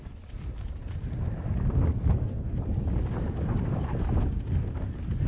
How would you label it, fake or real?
real